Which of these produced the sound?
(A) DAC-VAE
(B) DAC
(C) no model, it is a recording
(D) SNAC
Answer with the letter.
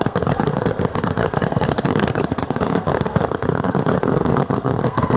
D